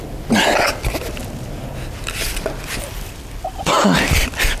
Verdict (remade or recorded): recorded